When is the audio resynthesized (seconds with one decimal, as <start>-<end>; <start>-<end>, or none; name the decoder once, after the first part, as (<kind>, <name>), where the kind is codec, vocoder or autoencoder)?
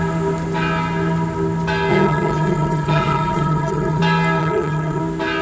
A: 1.9-4.0 (vocoder, HiFi-GAN); 4.4-5.0